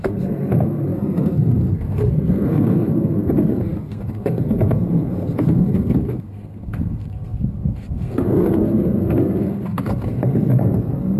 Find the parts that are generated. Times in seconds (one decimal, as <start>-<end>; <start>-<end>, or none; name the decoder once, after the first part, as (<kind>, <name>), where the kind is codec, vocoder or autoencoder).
0.0-11.2 (codec, SNAC)